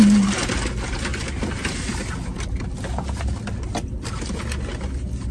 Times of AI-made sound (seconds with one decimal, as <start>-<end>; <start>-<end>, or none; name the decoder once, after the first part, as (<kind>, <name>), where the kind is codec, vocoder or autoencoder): none